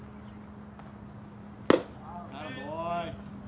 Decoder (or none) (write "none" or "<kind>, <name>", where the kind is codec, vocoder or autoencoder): none